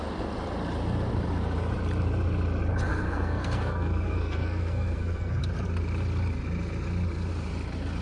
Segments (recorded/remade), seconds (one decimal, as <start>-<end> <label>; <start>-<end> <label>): 0.0-2.9 recorded; 2.9-5.4 remade; 5.4-8.0 recorded